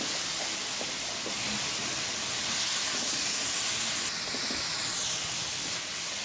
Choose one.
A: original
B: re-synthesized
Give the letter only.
A